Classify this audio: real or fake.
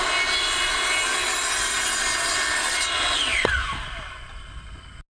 real